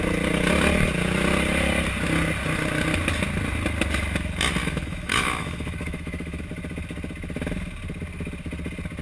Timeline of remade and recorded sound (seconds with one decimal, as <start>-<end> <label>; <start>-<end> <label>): 0.0-4.6 recorded; 4.6-6.4 remade; 6.4-9.0 recorded